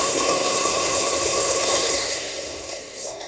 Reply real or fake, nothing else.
fake